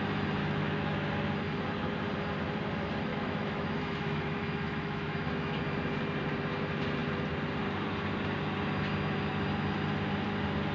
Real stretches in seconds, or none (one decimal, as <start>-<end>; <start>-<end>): 0.0-0.4; 1.1-3.1; 5.6-10.7